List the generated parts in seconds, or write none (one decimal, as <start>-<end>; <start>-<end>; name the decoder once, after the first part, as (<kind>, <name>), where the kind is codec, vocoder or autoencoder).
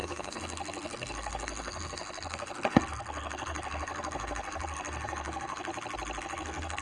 0.0-5.7 (codec, SNAC); 6.2-6.8